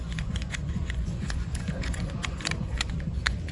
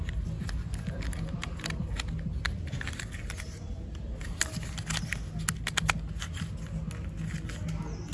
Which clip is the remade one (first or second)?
first